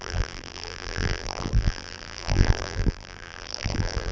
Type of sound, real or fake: fake